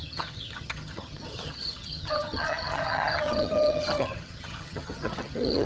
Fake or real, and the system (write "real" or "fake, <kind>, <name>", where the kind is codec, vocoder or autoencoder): fake, vocoder, HiFi-GAN